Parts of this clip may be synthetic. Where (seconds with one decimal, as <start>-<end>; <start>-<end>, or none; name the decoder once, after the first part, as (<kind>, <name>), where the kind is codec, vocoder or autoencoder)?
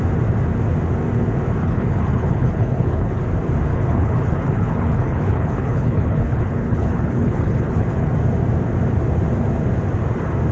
1.6-3.2 (codec, HILCodec); 3.7-8.1